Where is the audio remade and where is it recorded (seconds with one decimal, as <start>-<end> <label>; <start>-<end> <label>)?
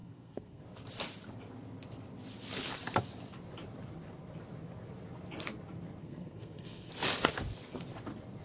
0.0-0.6 remade; 0.6-6.0 recorded; 6.0-6.9 remade; 6.9-8.4 recorded